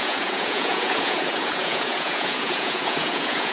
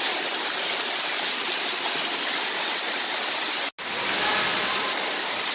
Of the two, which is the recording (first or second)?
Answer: second